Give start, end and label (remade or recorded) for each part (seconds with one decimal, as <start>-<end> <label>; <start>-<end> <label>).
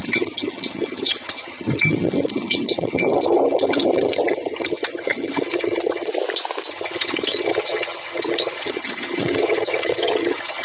0.0-6.1 remade; 6.1-6.7 recorded; 6.7-10.6 remade